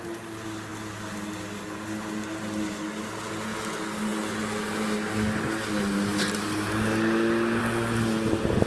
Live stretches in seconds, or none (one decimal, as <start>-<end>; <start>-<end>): 0.0-8.7